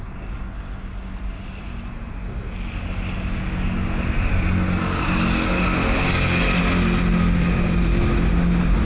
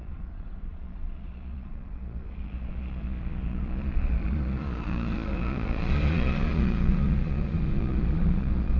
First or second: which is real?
first